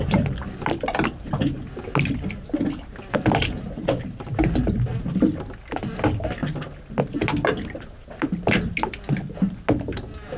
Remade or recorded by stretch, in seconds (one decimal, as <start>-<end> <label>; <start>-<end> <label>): 0.0-10.4 recorded